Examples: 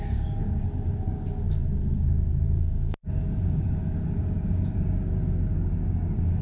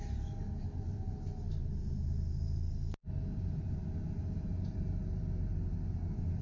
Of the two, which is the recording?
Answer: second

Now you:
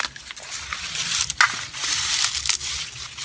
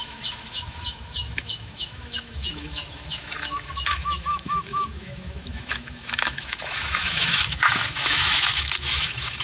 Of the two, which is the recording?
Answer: first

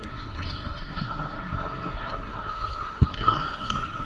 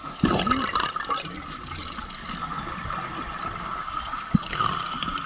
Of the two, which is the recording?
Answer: second